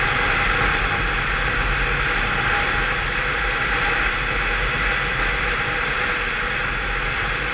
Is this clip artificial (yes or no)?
no